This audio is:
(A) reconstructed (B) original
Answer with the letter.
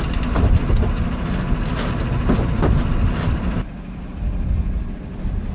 B